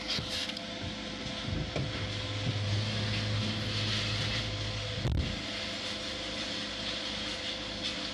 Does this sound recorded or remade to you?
recorded